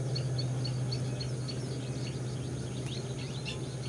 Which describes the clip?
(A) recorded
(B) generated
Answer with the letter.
A